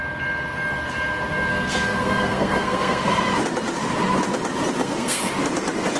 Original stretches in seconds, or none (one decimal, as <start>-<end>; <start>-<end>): 0.0-1.5; 3.2-4.8; 5.3-6.0